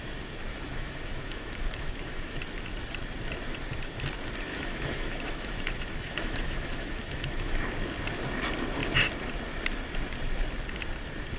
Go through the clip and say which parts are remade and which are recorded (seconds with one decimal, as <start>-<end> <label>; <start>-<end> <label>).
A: 0.0-0.5 recorded; 0.5-2.4 remade; 2.4-4.5 recorded; 4.5-7.6 remade; 7.6-11.4 recorded